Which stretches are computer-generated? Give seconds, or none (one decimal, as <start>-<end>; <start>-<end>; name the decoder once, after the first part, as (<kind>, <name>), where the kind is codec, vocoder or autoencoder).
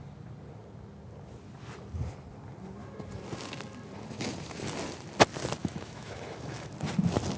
5.6-6.7 (autoencoder, DAC-VAE)